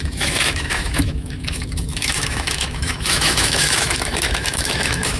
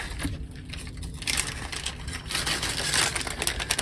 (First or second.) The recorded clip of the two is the second